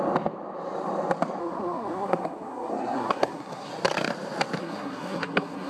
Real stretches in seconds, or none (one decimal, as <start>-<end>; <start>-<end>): 0.0-1.4; 3.7-4.6